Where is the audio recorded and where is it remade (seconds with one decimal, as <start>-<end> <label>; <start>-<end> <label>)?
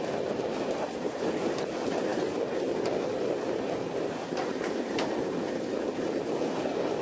0.0-7.0 recorded